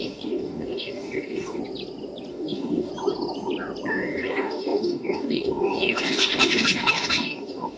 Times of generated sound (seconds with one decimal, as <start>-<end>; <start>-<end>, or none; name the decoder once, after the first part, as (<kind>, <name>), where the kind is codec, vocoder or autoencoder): 0.0-1.6 (codec, DAC); 2.3-2.9; 3.9-7.8